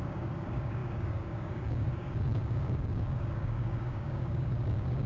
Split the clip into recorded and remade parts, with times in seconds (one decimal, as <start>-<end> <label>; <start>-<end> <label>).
0.0-5.1 remade